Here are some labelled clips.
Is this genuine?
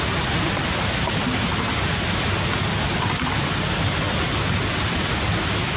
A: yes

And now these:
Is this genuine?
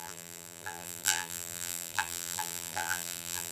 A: no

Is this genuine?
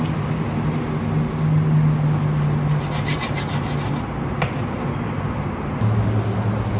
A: yes